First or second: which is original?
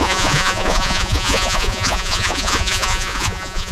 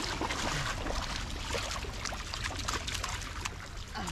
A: second